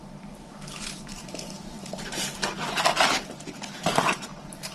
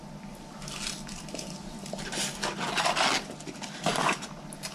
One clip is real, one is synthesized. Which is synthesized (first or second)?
first